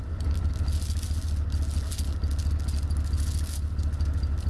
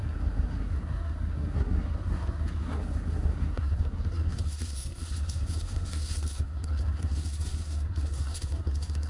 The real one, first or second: first